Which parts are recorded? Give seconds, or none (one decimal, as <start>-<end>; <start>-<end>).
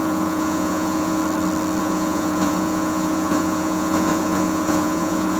1.2-1.8